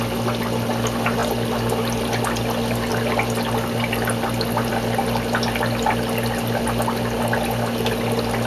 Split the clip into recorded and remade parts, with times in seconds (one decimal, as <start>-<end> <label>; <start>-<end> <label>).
0.0-8.5 recorded